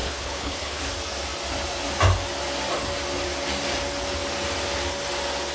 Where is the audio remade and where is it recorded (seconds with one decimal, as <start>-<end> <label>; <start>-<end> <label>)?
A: 0.0-0.8 remade; 0.8-5.5 recorded